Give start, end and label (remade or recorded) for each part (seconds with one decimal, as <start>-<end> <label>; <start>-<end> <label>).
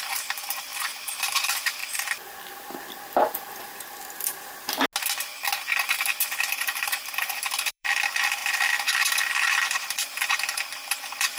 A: 0.0-1.8 remade; 1.8-6.5 recorded; 6.5-11.4 remade